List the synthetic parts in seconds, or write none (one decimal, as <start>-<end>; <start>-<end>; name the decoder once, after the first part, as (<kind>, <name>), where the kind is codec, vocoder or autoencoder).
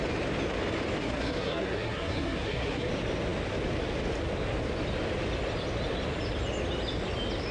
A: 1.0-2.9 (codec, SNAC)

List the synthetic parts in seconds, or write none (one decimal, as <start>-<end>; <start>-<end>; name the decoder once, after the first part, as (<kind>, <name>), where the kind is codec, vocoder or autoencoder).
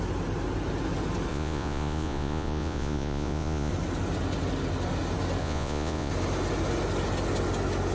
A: 1.3-3.7 (vocoder, Vocos); 5.4-6.1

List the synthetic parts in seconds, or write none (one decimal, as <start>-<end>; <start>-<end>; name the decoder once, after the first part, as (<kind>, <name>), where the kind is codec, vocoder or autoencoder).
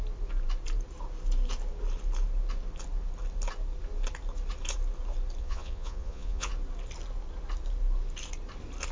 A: 5.4-6.5 (vocoder, Vocos)